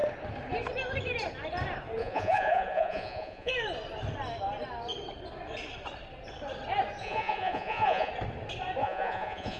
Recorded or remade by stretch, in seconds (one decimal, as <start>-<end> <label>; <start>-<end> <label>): 0.0-2.0 recorded; 2.0-3.5 remade; 3.5-7.0 recorded; 7.0-8.1 remade; 8.1-8.8 recorded; 8.8-9.6 remade